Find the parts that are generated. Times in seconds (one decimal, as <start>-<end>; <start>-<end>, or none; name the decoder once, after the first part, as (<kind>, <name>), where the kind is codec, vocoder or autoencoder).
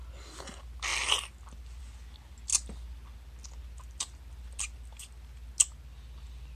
none